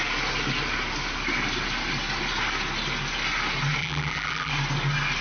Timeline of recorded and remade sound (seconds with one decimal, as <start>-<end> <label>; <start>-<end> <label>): 0.0-3.8 recorded; 3.8-4.5 remade; 4.5-5.2 recorded